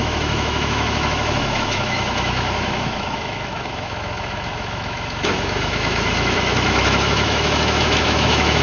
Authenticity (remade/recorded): remade